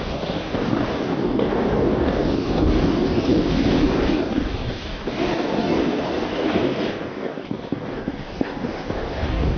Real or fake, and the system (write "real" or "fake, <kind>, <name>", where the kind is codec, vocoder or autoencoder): fake, codec, DAC